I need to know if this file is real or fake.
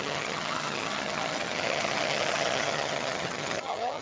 fake